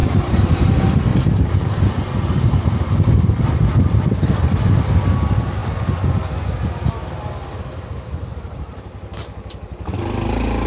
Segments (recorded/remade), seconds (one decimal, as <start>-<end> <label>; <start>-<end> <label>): 0.0-0.7 remade; 0.7-1.1 recorded; 1.1-1.8 remade; 1.8-8.3 recorded; 8.3-10.0 remade; 10.0-10.7 recorded